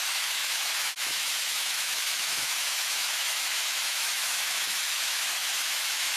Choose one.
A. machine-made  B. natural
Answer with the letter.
A